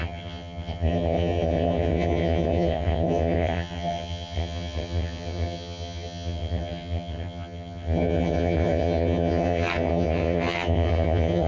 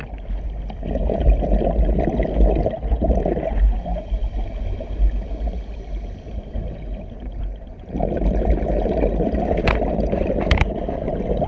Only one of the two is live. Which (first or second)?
second